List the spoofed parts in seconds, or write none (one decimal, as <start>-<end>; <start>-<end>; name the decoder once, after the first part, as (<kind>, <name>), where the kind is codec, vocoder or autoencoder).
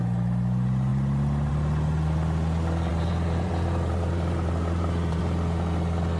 2.9-5.2 (vocoder, BigVGAN v2)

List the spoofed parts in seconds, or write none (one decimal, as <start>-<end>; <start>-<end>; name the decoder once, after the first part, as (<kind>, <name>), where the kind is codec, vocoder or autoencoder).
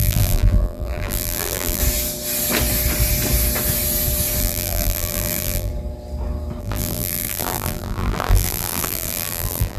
0.0-1.8 (vocoder, BigVGAN v2); 4.4-5.7; 6.6-9.8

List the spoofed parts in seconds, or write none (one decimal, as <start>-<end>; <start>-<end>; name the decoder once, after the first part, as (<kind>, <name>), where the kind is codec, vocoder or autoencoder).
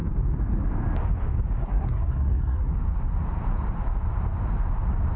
1.6-2.7 (codec, SNAC)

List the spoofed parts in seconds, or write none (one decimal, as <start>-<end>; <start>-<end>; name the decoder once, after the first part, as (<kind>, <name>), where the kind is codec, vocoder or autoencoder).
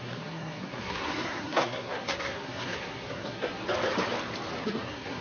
0.0-3.6 (codec, SNAC); 4.6-5.2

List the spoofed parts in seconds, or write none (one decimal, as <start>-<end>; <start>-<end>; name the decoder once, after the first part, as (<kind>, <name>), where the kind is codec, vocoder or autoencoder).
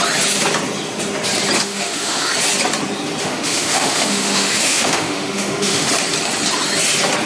1.6-2.3 (autoencoder, DAC-VAE); 3.2-5.9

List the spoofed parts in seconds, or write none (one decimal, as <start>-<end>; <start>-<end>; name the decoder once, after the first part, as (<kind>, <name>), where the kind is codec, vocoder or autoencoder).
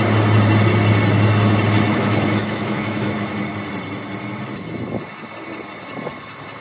1.9-3.1 (autoencoder, DAC-VAE)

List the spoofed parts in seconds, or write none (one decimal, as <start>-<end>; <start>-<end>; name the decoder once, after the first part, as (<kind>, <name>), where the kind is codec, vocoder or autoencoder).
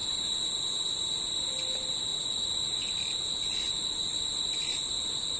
none